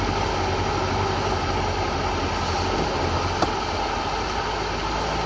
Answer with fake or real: real